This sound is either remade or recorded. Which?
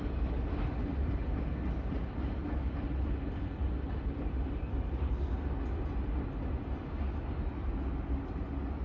recorded